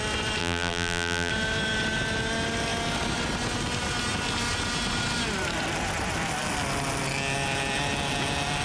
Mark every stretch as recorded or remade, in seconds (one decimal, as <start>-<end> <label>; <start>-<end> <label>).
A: 0.0-0.4 recorded; 0.4-1.3 remade; 1.3-8.6 recorded